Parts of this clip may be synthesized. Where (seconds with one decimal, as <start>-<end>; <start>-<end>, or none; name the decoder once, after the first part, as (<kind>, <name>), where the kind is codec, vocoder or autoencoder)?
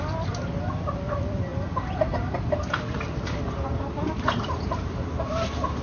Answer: none